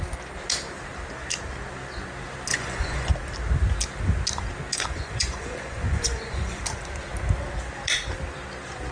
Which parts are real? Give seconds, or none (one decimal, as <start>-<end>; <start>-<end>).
0.0-2.5; 3.1-4.7; 6.6-8.9